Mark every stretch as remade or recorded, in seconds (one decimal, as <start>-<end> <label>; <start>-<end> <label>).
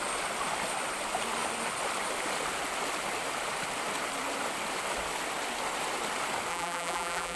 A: 0.0-6.5 recorded; 6.5-7.4 remade